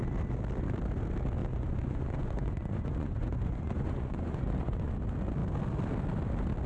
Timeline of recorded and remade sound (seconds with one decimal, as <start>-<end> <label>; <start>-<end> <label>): 0.0-1.4 recorded; 1.4-4.9 remade; 4.9-6.7 recorded